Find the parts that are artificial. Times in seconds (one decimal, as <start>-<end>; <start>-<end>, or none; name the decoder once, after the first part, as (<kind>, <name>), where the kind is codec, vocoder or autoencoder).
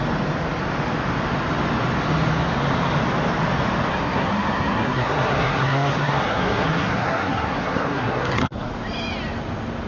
3.9-8.7 (codec, SNAC)